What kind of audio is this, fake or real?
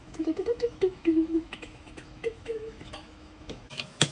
fake